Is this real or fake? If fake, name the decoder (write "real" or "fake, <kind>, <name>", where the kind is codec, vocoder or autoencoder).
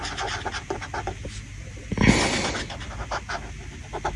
real